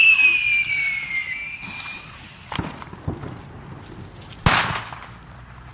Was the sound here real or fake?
real